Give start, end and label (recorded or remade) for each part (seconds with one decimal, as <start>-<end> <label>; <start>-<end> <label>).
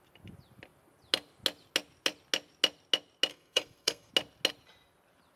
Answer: 0.0-3.3 recorded; 3.3-4.1 remade; 4.1-5.4 recorded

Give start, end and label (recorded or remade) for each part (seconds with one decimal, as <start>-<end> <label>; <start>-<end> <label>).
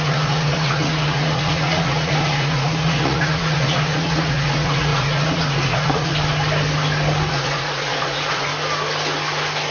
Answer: 0.0-6.1 remade; 6.1-7.3 recorded; 7.3-8.5 remade; 8.5-9.7 recorded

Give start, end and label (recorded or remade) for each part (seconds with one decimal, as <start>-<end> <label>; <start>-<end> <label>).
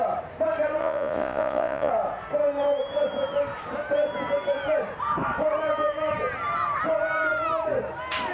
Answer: 0.0-0.8 recorded; 0.8-1.9 remade; 1.9-8.3 recorded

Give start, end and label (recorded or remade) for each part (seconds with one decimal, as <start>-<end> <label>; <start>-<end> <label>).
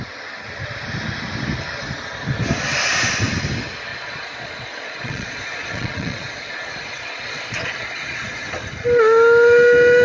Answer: 0.0-3.9 recorded; 3.9-8.5 remade; 8.5-10.0 recorded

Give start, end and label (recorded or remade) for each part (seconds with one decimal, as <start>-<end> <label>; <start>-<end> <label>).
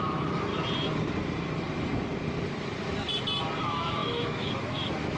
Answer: 0.0-0.5 remade; 0.5-3.6 recorded; 3.6-5.2 remade